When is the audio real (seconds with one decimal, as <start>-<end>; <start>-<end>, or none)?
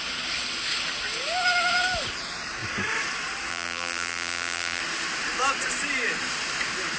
0.0-3.5; 4.8-7.0